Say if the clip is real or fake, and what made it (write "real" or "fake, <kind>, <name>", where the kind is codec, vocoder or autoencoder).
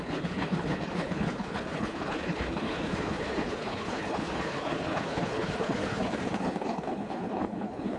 fake, codec, HILCodec